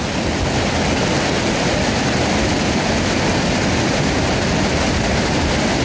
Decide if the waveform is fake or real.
real